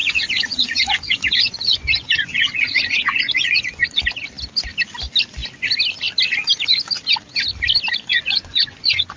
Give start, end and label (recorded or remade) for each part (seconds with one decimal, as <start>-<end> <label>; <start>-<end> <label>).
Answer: 0.0-4.0 remade; 4.0-8.1 recorded; 8.1-9.2 remade